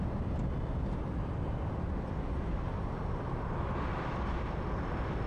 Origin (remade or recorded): recorded